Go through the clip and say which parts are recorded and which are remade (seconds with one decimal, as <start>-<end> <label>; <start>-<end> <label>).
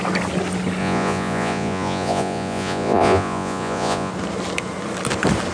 0.0-0.8 recorded; 0.8-4.1 remade; 4.1-5.5 recorded